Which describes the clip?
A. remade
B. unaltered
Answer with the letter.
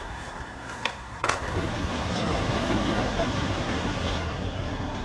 A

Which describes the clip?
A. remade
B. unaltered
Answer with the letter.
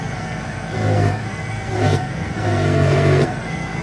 A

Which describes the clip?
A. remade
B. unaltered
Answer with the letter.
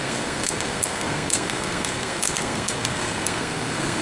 A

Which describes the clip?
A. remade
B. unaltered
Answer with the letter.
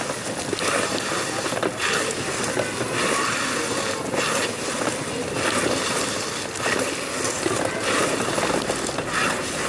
B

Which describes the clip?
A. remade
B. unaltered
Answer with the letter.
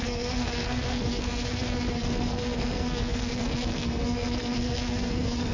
A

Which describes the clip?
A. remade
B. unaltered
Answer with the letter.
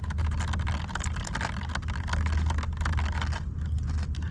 B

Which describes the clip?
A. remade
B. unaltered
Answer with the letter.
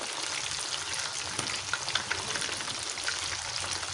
B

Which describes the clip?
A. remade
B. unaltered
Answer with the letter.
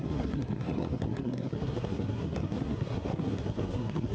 A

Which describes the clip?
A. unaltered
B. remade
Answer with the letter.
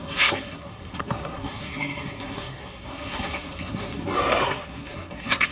B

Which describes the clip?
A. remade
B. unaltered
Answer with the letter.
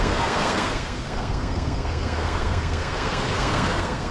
A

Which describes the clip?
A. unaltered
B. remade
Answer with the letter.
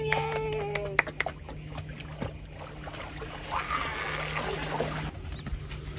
A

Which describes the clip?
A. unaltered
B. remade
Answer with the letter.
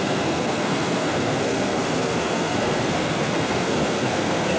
B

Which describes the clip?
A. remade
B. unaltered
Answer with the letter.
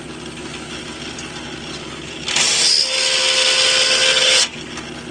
B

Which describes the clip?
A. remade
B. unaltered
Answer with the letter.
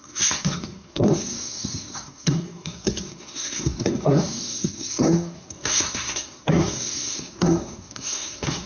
A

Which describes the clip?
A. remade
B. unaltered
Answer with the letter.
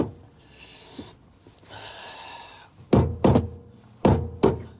B